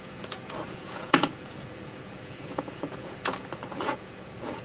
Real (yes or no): no